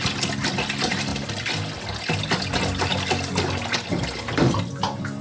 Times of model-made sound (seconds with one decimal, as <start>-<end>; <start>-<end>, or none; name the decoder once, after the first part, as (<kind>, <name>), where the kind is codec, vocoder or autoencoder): none